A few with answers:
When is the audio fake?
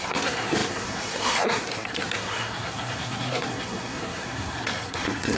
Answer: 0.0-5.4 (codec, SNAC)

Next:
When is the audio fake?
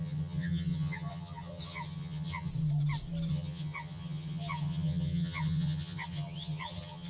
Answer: 0.0-2.5 (vocoder, HiFi-GAN); 3.3-7.1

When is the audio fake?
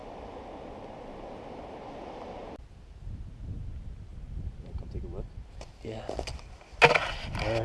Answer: 4.1-5.5 (vocoder, BigVGAN v2)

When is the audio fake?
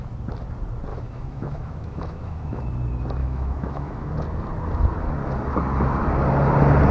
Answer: 0.9-2.6 (autoencoder, DAC-VAE); 3.2-4.1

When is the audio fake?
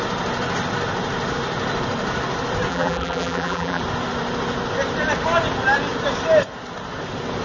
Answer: 2.7-3.8 (vocoder, BigVGAN v2)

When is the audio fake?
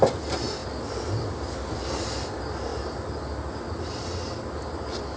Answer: none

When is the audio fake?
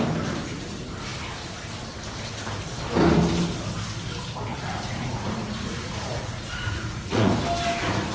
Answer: 4.5-7.3 (vocoder, Vocos)